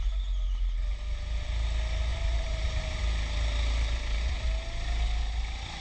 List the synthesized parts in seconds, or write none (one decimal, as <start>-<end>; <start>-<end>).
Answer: 2.1-3.0